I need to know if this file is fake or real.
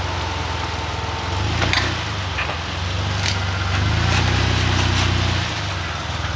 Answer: real